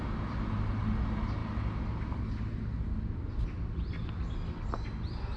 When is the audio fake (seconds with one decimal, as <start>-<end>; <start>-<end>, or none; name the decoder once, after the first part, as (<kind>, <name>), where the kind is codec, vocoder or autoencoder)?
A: none